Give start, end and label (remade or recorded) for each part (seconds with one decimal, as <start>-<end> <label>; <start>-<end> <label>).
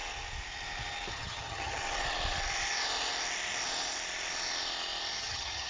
0.0-1.1 recorded; 1.1-1.8 remade; 1.8-5.2 recorded; 5.2-5.7 remade